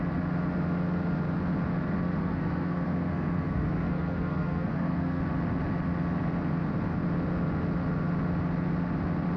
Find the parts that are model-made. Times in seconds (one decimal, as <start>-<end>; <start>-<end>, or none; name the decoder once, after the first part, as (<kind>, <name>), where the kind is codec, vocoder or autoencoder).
2.2-5.2 (codec, SNAC)